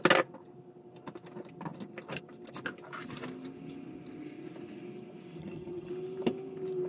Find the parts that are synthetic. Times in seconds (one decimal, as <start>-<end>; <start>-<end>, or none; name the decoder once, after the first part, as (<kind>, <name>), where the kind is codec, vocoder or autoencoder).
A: 5.4-5.9 (vocoder, HiFi-GAN)